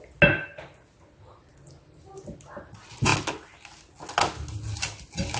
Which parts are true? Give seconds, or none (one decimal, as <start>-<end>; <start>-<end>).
0.0-1.5; 2.6-5.4